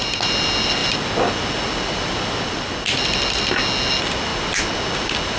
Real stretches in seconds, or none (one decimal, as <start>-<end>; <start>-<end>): 0.0-5.4